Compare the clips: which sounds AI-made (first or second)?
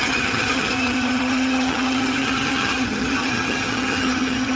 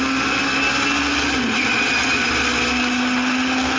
first